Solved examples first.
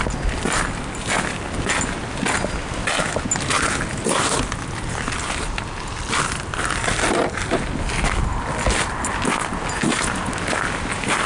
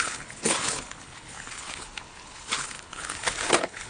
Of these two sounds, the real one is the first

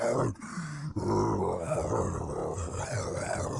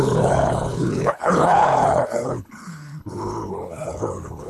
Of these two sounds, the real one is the first